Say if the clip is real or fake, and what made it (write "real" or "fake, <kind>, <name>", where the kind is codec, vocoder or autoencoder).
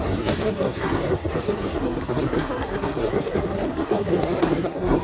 fake, codec, SNAC